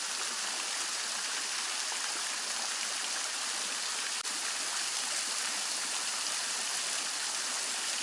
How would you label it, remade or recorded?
recorded